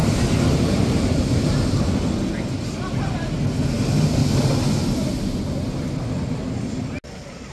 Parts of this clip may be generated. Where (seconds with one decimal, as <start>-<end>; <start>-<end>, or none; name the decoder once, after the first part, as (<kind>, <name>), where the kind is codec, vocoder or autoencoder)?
none